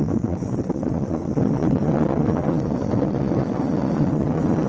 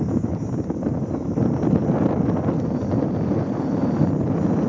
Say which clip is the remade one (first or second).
first